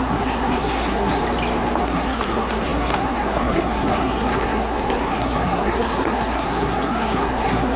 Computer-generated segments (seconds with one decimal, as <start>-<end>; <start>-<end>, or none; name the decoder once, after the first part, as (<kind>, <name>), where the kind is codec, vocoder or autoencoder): 0.0-1.2 (codec, SNAC); 1.8-7.8